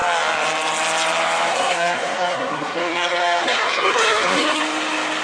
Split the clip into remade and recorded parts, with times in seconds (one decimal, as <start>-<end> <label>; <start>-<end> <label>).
0.0-1.5 recorded; 1.5-4.6 remade; 4.6-5.2 recorded